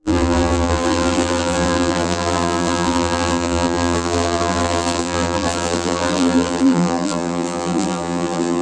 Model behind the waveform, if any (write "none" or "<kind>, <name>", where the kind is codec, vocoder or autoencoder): vocoder, BigVGAN v2